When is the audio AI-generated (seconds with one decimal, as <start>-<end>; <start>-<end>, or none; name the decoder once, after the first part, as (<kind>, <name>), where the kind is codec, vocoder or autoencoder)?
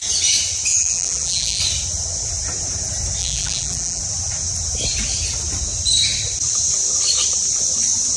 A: 0.7-1.6 (vocoder, BigVGAN v2); 3.2-4.0